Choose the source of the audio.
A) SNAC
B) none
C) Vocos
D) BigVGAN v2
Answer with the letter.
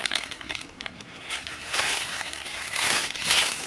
A